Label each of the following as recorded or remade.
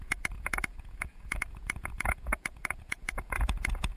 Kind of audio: remade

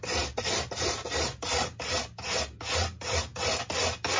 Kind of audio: recorded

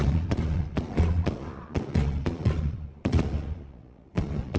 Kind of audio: remade